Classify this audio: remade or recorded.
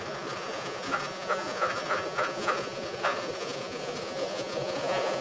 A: remade